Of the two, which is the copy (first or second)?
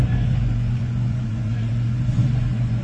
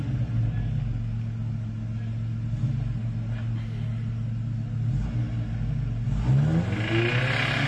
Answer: first